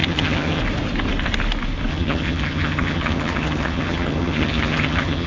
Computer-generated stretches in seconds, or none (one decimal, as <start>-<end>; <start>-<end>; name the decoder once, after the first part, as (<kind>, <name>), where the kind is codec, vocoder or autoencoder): 0.0-0.6 (vocoder, HiFi-GAN); 1.9-5.3